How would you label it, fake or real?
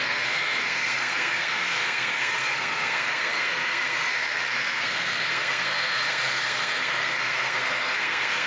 fake